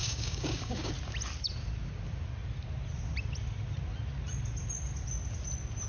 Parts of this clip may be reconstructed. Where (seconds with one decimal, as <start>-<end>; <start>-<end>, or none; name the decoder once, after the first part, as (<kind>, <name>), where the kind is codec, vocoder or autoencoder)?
0.0-0.9 (codec, DAC)